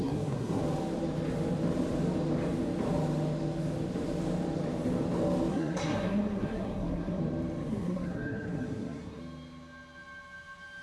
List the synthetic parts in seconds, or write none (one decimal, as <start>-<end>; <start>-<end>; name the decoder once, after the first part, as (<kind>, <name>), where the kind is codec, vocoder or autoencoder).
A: 0.0-0.6 (codec, SNAC); 5.5-7.2; 7.7-9.2